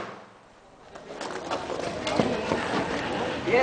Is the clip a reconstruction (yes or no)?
no